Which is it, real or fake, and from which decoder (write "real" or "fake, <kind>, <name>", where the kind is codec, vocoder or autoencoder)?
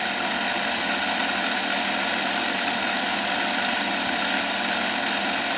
real